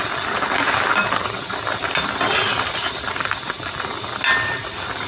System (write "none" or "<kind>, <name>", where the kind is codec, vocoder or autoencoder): none